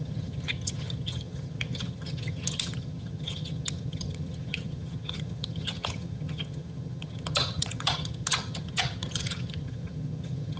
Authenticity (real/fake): fake